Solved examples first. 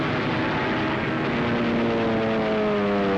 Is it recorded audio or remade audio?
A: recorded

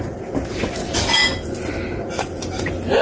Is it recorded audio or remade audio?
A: recorded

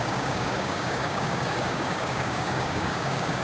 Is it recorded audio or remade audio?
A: remade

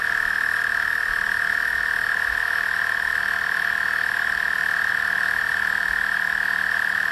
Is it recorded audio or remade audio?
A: remade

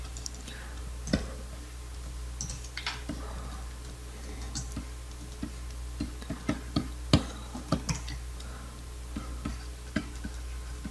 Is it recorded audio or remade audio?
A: recorded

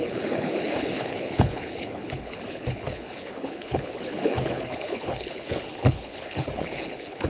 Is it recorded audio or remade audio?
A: remade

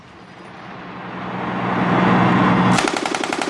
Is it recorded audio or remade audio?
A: recorded